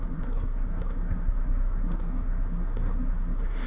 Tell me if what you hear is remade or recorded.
remade